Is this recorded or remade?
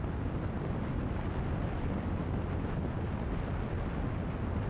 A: recorded